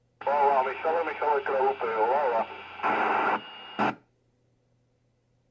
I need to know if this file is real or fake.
real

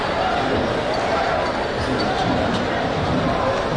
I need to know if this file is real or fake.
real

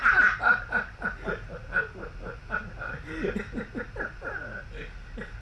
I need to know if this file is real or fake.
real